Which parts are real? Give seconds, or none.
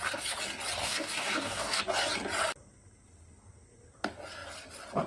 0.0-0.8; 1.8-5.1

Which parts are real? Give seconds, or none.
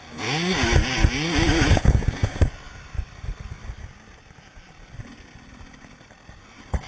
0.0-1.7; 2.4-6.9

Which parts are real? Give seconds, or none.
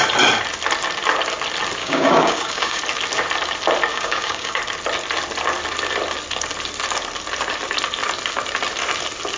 0.0-1.8; 2.8-3.9; 4.6-9.4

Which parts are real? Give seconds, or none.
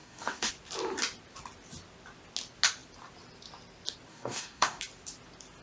0.5-4.1; 4.8-5.6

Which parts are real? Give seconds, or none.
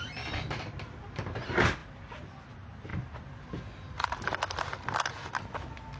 0.0-6.0